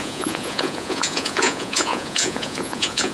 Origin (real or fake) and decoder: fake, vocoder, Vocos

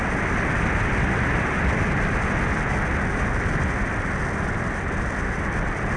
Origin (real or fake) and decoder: real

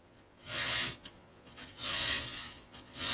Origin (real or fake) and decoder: fake, vocoder, Vocos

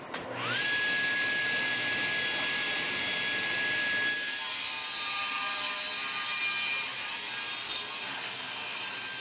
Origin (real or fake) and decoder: real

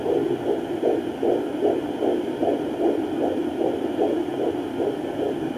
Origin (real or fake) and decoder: real